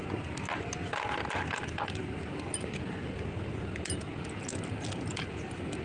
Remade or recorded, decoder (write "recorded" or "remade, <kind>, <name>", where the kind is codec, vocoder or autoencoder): recorded